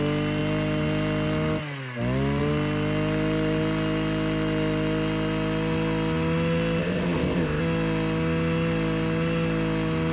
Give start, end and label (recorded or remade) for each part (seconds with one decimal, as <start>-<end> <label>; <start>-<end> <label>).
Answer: 0.0-6.8 recorded; 6.8-7.6 remade; 7.6-10.1 recorded